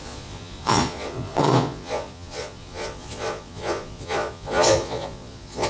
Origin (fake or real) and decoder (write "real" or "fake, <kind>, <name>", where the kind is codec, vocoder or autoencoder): fake, vocoder, Vocos